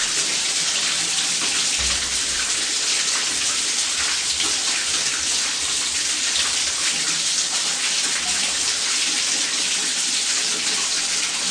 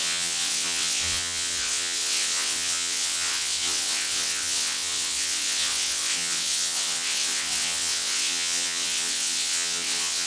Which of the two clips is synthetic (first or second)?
second